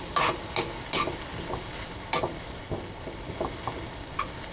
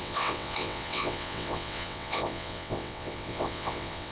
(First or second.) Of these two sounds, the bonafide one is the first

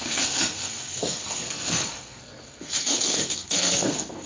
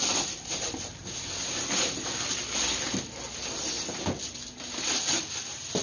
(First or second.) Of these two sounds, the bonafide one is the second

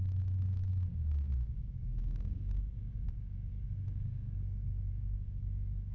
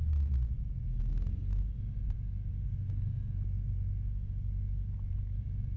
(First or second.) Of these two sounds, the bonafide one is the second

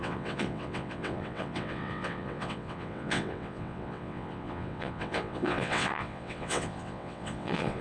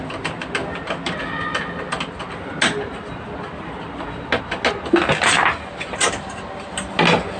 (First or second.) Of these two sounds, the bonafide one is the second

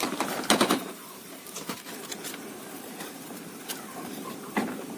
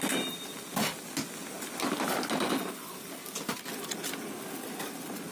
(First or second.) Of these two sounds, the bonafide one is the second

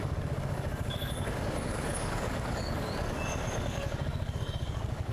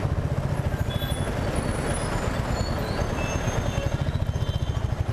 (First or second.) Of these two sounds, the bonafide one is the second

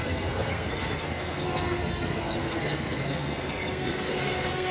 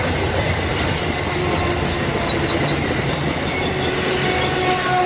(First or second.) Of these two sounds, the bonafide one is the second